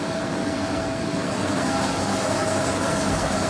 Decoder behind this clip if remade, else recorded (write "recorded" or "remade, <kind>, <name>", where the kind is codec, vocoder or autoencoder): remade, codec, SNAC